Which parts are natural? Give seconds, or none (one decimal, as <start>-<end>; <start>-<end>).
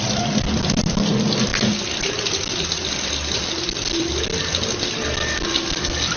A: 0.0-6.2